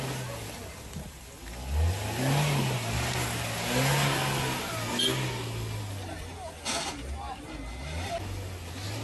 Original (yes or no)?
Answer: yes